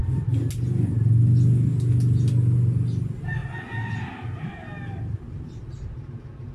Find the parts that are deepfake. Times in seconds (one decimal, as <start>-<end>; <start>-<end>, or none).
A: none